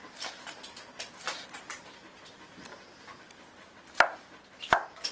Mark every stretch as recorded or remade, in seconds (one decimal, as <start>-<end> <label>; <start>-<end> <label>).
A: 0.0-5.1 recorded